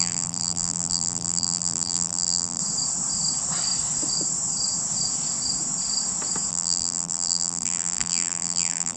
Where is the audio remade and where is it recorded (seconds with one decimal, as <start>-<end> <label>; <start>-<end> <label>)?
0.0-2.6 remade; 2.6-6.5 recorded; 6.5-9.0 remade